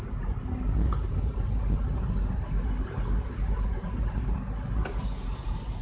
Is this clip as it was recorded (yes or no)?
yes